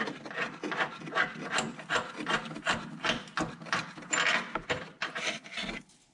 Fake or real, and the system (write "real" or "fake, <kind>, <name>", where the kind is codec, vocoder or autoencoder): real